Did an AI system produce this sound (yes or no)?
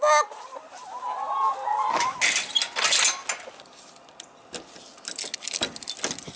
no